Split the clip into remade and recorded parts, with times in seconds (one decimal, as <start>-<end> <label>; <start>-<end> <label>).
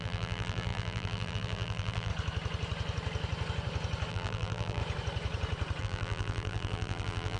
0.0-2.1 remade; 2.1-4.1 recorded; 4.1-4.8 remade; 4.8-5.8 recorded; 5.8-7.4 remade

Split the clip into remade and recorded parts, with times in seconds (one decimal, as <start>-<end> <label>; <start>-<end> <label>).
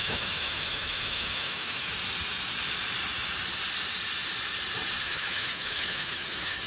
0.0-1.9 remade; 1.9-5.0 recorded; 5.0-6.7 remade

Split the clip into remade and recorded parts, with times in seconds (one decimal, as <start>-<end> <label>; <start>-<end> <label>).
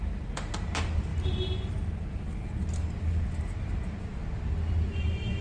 0.0-5.4 recorded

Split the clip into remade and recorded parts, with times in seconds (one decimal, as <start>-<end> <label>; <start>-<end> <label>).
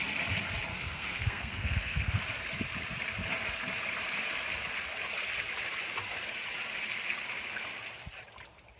0.0-0.7 recorded; 0.7-2.2 remade; 2.2-8.8 recorded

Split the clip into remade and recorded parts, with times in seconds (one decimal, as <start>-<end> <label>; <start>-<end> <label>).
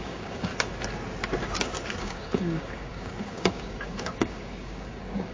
0.0-0.5 remade; 0.5-2.0 recorded; 2.0-5.3 remade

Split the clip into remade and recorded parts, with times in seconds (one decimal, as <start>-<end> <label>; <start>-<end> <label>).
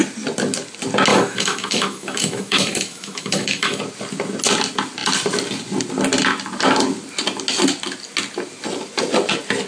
0.0-1.1 recorded; 1.1-3.8 remade; 3.8-9.7 recorded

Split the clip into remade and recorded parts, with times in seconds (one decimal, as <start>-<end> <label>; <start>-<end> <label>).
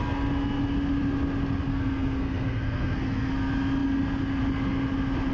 0.0-1.7 recorded; 1.7-3.3 remade; 3.3-5.3 recorded